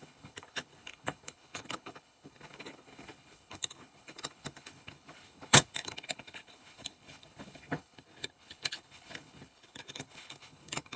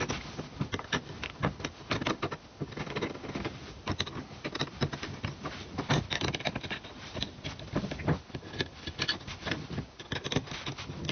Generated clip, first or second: first